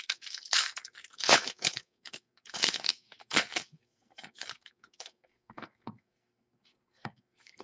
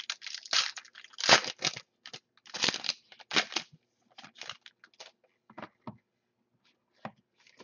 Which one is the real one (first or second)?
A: second